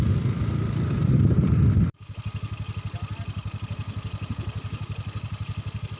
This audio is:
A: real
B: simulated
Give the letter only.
A